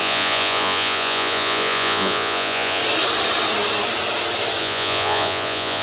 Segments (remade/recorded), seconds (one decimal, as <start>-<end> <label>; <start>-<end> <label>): 0.0-2.8 remade; 2.8-4.6 recorded; 4.6-5.8 remade